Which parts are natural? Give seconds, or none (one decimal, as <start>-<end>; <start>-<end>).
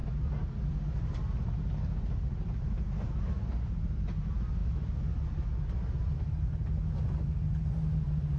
0.0-8.4